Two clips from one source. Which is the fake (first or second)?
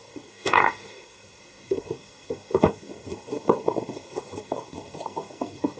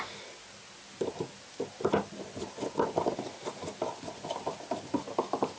first